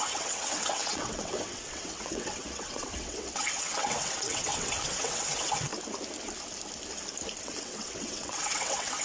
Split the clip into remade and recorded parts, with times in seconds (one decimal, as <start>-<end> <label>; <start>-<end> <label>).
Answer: 0.0-5.7 remade; 5.7-7.4 recorded; 7.4-9.0 remade